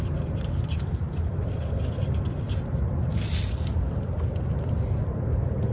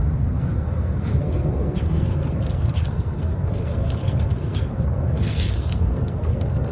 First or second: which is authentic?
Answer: first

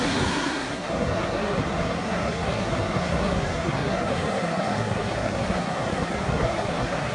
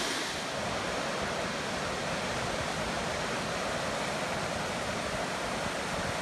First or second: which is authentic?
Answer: second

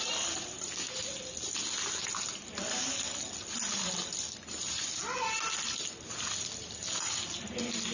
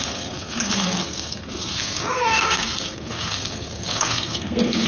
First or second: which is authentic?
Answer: first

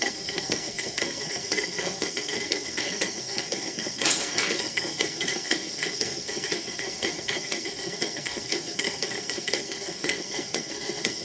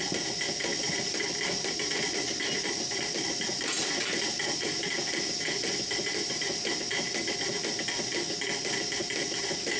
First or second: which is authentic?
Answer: second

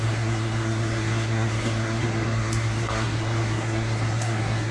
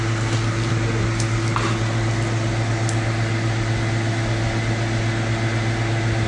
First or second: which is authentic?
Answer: second